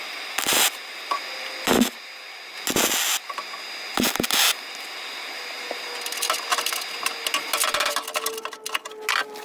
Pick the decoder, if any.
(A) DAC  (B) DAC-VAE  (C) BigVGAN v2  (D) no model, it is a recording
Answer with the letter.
D